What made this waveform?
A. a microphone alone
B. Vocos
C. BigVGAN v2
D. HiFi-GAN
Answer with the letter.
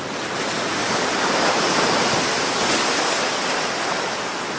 A